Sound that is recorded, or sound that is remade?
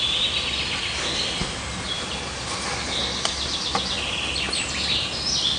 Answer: recorded